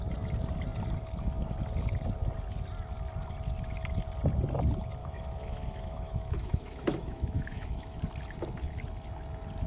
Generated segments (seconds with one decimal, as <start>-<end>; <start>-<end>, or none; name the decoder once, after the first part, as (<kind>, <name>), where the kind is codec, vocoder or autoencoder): 5.0-8.0 (autoencoder, DAC-VAE)